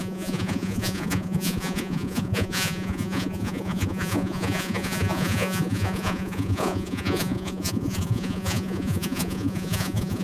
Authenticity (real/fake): fake